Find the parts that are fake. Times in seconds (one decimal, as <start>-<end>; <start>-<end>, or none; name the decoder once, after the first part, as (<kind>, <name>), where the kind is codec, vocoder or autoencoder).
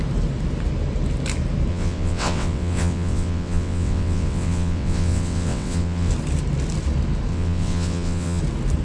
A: 1.7-6.1 (vocoder, WaveNeXt); 7.3-8.4